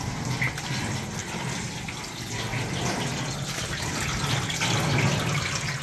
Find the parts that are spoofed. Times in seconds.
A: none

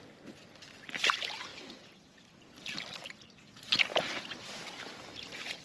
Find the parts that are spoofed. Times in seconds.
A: none

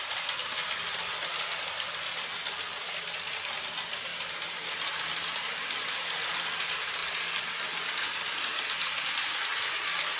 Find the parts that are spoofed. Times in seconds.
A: none

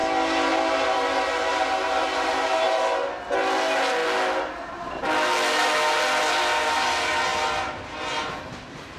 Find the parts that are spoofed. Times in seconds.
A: none

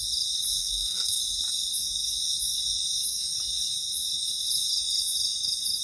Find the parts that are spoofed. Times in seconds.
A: 0.6-1.2 (codec, SNAC)

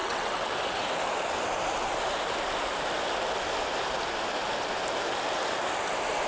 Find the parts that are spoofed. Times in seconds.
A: 0.0-0.5 (vocoder, WaveNeXt)

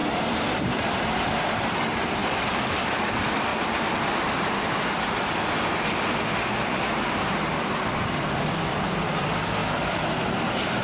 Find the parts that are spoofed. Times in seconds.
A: 0.0-2.2 (vocoder, BigVGAN v2); 2.8-3.5; 8.2-9.6; 10.4-10.8

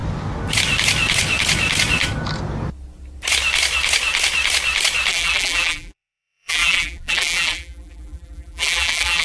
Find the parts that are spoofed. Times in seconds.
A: 5.1-9.2 (vocoder, BigVGAN v2)